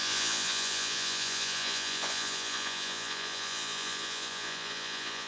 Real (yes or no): no